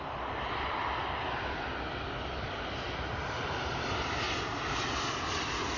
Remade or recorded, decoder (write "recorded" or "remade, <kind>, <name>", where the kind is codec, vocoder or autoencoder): recorded